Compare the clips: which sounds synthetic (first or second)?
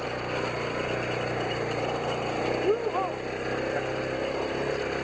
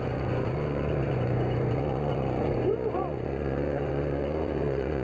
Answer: second